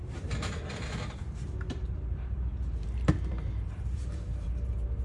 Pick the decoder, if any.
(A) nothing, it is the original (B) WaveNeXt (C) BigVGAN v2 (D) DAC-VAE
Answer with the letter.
C